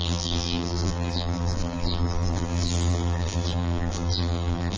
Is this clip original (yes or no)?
no